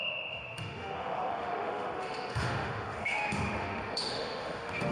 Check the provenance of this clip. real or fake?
fake